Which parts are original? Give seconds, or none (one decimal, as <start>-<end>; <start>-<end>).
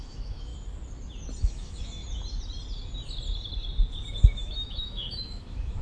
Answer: 0.5-1.4; 2.0-4.1